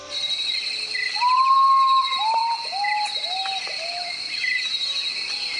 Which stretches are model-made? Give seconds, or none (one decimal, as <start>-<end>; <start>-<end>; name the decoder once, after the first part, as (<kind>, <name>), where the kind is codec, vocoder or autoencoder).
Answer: none